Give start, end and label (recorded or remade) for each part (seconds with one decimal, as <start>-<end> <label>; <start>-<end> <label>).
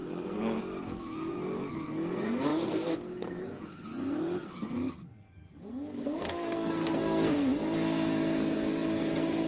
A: 0.0-9.5 remade